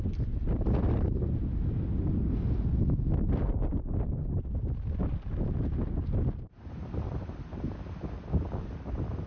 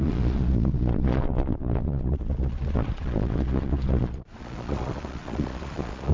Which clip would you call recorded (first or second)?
first